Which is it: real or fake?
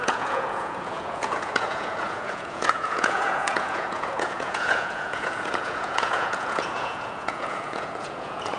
fake